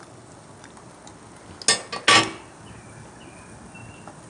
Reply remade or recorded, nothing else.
recorded